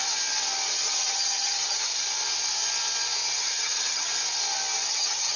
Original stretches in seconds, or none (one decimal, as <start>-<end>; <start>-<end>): 0.0-0.7; 1.9-3.4; 4.1-4.9